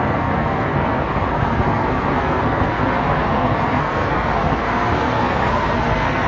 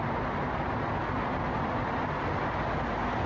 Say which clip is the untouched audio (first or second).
second